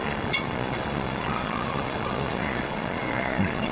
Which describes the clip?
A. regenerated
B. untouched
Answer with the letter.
A